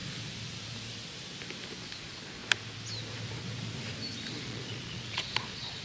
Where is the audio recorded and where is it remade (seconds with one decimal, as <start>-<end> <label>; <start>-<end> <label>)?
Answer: 0.0-2.0 recorded; 2.0-2.4 remade; 2.4-4.4 recorded; 4.4-5.8 remade